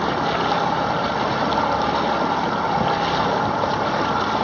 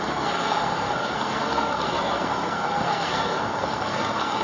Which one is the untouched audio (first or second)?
first